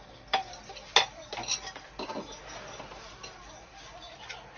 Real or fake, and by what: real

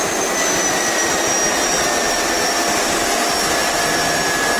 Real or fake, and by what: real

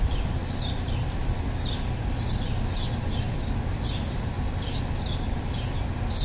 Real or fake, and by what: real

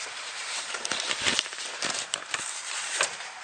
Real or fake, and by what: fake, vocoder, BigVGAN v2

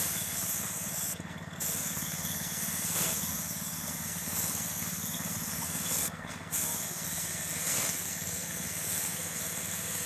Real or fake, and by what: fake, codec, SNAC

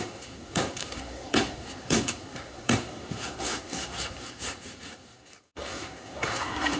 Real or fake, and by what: fake, codec, SNAC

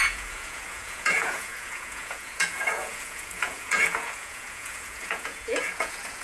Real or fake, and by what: fake, vocoder, Vocos